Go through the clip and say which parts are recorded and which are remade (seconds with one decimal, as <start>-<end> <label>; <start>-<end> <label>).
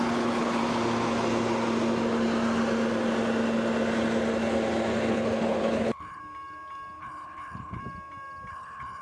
0.0-0.6 remade; 0.6-5.1 recorded; 5.1-6.2 remade; 6.2-7.0 recorded; 7.0-7.8 remade; 7.8-8.5 recorded; 8.5-9.0 remade